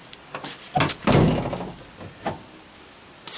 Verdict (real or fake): real